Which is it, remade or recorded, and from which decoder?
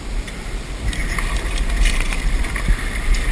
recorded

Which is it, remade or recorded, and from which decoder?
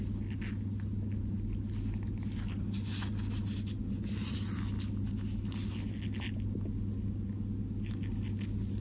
recorded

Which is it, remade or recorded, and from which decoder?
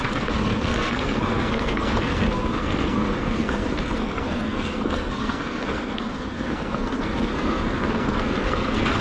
remade, codec, SNAC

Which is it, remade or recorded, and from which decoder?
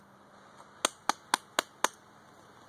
recorded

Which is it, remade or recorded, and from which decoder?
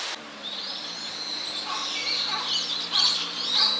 recorded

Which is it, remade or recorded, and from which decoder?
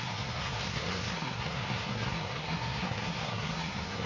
remade, codec, SNAC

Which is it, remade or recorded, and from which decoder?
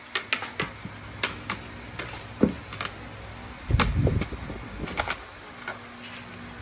recorded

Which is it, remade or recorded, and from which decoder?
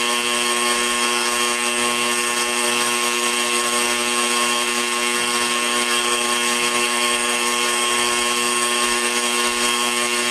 remade, codec, SNAC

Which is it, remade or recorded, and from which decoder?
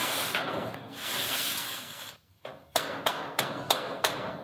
remade, codec, SNAC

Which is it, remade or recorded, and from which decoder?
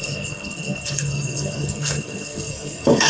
remade, codec, SNAC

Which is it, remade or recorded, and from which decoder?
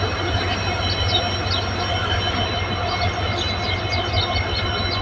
recorded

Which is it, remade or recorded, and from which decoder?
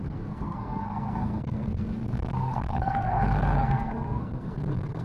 remade, codec, SNAC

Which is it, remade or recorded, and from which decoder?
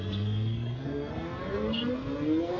remade, codec, SNAC